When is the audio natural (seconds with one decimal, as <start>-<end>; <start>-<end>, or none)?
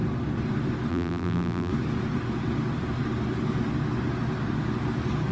0.0-0.9; 1.7-5.3